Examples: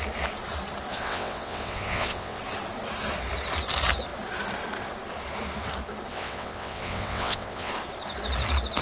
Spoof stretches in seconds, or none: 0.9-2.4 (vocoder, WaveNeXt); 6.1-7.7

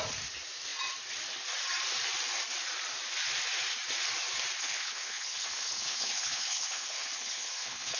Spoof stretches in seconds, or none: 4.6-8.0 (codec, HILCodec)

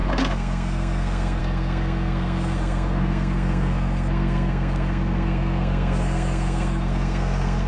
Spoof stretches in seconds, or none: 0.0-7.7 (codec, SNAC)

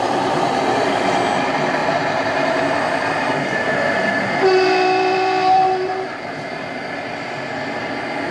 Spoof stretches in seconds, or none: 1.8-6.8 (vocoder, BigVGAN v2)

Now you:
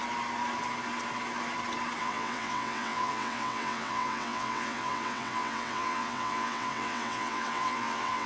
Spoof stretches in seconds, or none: 2.0-8.3 (vocoder, WaveNeXt)

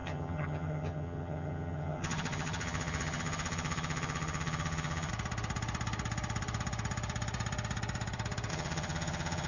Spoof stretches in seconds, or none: 0.0-5.1 (vocoder, HiFi-GAN); 8.5-9.5

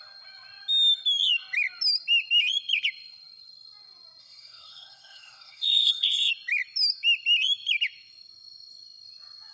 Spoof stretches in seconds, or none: 4.2-6.3 (codec, SNAC)

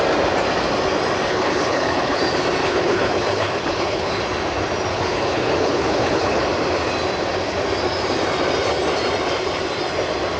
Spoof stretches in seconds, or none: 1.3-2.2 (codec, HILCodec); 2.6-4.2; 4.9-6.5